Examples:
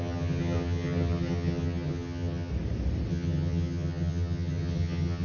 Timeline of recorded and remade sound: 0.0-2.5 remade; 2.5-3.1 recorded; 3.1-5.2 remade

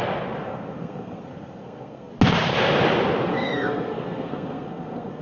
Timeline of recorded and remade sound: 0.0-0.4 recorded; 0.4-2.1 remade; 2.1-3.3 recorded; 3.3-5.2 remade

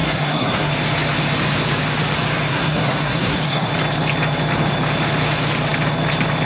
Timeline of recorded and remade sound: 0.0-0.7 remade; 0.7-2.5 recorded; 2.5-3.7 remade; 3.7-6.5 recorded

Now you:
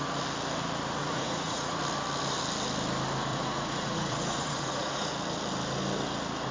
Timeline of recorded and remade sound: 0.0-1.0 recorded; 1.0-1.8 remade; 1.8-3.3 recorded; 3.3-5.1 remade; 5.1-6.5 recorded